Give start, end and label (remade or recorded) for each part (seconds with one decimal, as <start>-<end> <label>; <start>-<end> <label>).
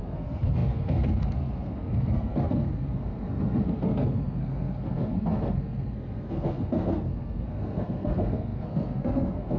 0.0-9.6 remade